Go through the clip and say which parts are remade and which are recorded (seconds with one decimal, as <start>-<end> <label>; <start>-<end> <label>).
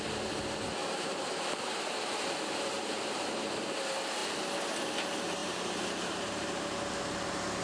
0.0-0.8 recorded; 0.8-3.3 remade; 3.3-5.4 recorded; 5.4-6.9 remade; 6.9-7.6 recorded